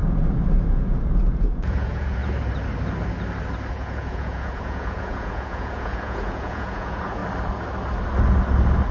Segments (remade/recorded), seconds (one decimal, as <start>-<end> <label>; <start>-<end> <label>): 0.0-0.7 recorded; 0.7-2.2 remade; 2.2-3.7 recorded; 3.7-7.2 remade; 7.2-8.9 recorded